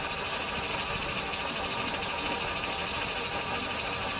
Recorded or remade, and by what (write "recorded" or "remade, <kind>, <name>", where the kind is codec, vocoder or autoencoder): recorded